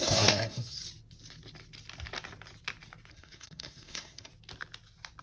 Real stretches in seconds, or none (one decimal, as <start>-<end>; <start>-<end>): 0.8-3.1; 4.3-5.2